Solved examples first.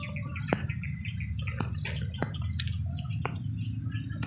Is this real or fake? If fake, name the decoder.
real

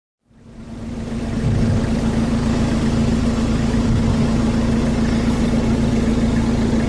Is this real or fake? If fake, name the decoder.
real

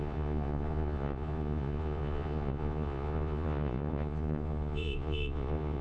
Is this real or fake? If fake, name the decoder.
fake, vocoder, Vocos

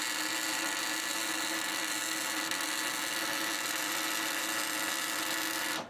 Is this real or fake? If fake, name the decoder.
real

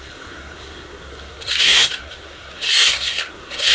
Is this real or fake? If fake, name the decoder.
fake, codec, SNAC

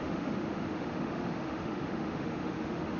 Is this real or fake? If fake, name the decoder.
fake, autoencoder, DAC-VAE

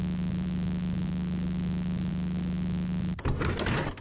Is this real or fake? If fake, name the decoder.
real